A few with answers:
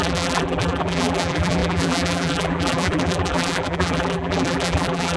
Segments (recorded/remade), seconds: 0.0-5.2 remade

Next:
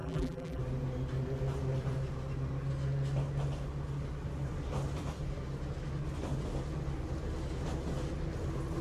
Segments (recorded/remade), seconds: 0.0-0.6 remade; 0.6-8.8 recorded

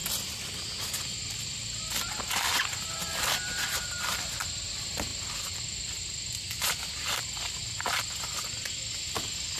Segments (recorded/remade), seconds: 0.0-3.0 recorded; 3.0-3.9 remade; 3.9-9.6 recorded